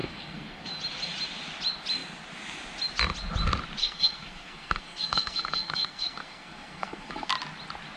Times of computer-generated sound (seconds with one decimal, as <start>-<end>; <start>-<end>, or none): 0.0-0.7; 3.8-7.3